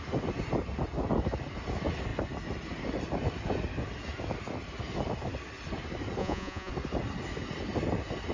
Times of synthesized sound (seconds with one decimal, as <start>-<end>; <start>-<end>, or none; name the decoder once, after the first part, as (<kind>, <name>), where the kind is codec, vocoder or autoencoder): 6.2-6.7 (vocoder, Vocos)